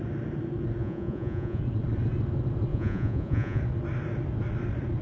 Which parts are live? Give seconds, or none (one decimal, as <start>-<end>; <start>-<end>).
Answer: 0.0-0.8; 1.6-2.7; 3.6-5.0